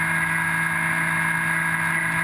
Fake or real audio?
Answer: real